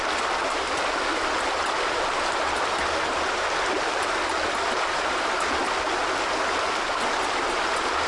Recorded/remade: recorded